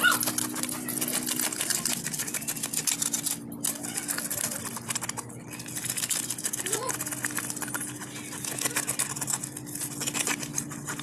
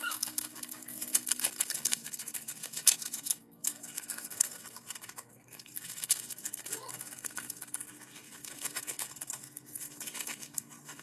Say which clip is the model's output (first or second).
second